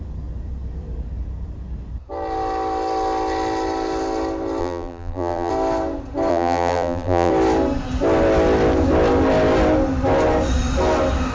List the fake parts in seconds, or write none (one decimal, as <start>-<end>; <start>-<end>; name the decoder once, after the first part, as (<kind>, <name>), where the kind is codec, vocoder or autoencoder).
4.6-5.5 (vocoder, BigVGAN v2); 6.3-7.3